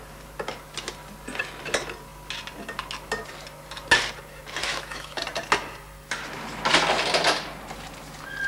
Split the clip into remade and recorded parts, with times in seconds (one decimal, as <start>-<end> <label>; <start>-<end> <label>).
0.0-4.6 recorded; 4.6-5.2 remade; 5.2-8.5 recorded